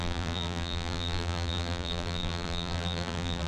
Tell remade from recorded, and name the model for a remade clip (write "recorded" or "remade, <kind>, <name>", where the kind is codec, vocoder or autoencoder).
remade, vocoder, BigVGAN v2